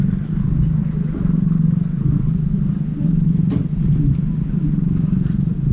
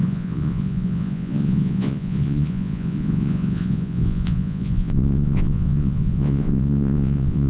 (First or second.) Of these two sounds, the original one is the first